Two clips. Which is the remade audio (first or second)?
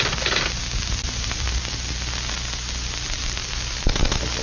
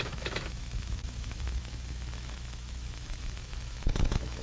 second